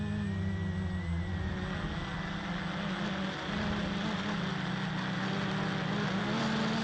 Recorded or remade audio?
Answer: recorded